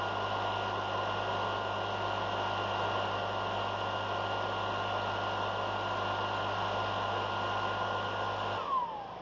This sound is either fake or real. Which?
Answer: real